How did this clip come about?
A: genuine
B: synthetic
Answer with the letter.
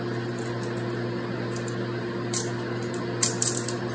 A